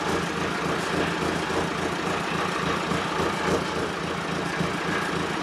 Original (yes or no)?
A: no